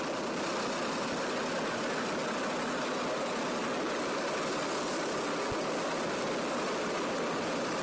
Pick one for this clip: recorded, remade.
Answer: recorded